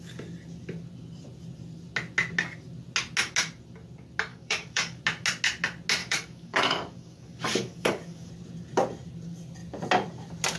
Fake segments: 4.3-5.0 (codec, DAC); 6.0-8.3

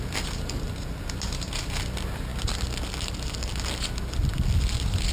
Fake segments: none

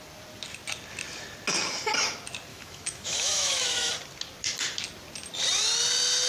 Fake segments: 2.5-3.9 (autoencoder, DAC-VAE)

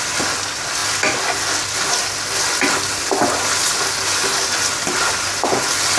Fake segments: none

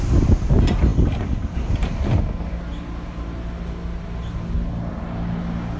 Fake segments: none

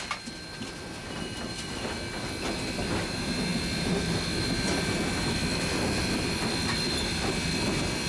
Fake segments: none